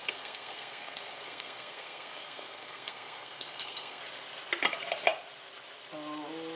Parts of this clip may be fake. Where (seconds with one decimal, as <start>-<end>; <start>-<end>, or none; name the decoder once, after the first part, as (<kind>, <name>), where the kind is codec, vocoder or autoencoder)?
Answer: 0.0-4.0 (codec, SNAC)